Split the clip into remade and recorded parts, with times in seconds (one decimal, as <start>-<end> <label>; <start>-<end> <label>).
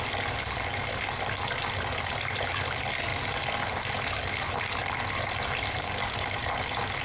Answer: 0.0-7.0 recorded